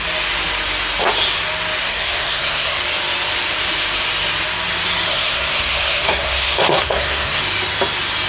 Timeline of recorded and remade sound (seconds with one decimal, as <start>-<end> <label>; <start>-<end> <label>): 0.0-1.8 recorded; 1.8-2.8 remade; 2.8-5.1 recorded; 5.1-7.4 remade; 7.4-8.3 recorded